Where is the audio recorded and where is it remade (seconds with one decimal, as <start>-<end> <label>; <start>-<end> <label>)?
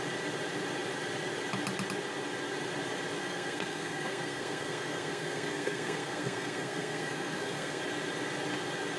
0.0-3.2 recorded; 3.2-7.8 remade; 7.8-9.0 recorded